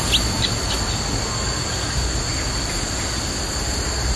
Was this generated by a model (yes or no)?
no